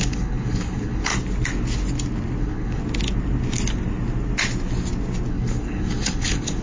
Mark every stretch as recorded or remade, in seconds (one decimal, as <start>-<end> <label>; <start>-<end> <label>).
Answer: 0.0-1.1 remade; 1.1-2.4 recorded; 2.4-2.8 remade; 2.8-5.3 recorded; 5.3-6.6 remade